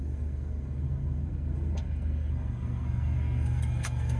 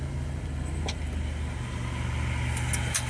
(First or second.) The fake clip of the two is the first